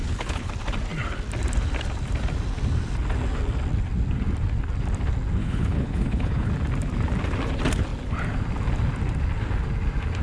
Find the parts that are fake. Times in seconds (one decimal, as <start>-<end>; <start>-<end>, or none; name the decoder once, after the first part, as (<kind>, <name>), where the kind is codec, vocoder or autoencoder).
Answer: 0.0-0.5 (codec, HILCodec); 5.4-6.5